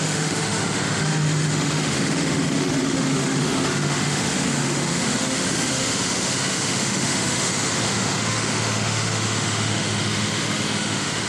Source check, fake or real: fake